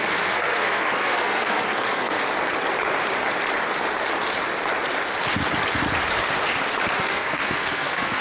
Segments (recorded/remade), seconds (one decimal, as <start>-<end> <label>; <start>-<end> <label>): 0.0-2.2 remade; 2.2-7.0 recorded; 7.0-8.2 remade